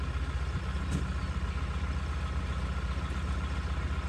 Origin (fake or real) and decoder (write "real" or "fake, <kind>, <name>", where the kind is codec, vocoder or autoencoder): real